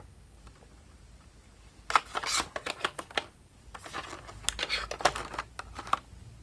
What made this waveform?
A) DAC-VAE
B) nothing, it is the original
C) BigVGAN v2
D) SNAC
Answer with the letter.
B